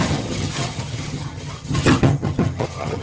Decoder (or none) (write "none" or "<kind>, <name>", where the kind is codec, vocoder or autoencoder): vocoder, HiFi-GAN